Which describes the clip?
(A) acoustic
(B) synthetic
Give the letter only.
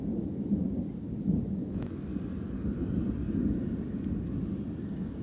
A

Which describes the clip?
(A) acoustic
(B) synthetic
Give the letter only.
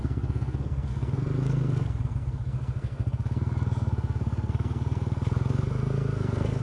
B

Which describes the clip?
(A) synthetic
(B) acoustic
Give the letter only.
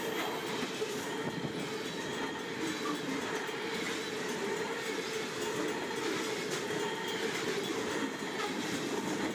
B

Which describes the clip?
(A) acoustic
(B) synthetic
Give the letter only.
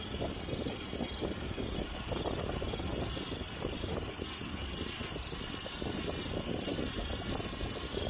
A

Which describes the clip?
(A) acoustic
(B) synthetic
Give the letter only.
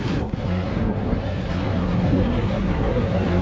B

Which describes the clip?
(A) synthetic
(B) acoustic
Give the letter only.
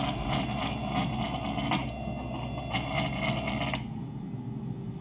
B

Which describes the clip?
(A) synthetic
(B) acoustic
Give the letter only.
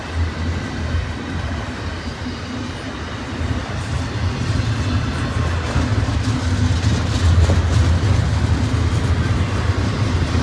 B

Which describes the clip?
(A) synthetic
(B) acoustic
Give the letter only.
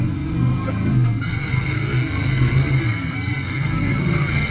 A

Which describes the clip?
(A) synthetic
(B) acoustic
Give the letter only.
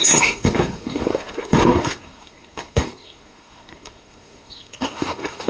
A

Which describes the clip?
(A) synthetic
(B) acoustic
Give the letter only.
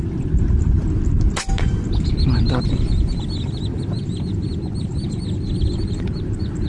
B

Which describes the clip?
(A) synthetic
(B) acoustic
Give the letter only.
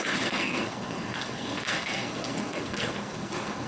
A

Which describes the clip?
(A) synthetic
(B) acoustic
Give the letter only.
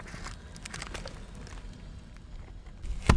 B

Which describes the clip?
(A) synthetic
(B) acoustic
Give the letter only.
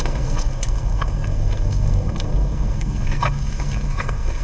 A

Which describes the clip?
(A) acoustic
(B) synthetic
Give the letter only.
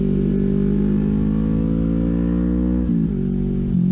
A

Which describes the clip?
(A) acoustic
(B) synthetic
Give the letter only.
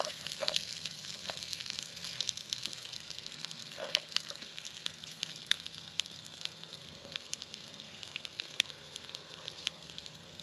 B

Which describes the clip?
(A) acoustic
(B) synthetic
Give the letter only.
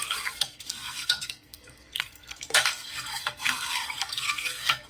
B